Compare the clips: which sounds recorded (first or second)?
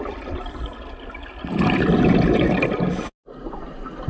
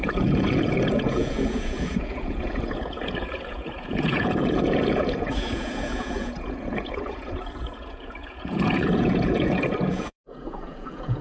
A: first